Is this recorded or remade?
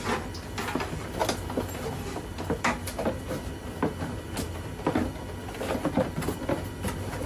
recorded